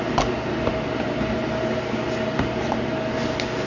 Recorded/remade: recorded